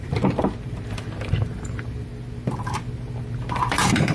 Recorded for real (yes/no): no